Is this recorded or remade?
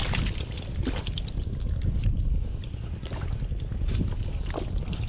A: recorded